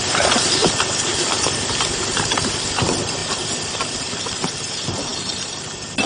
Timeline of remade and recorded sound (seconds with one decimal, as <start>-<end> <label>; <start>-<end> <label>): 0.0-0.6 remade; 0.6-1.9 recorded; 1.9-6.1 remade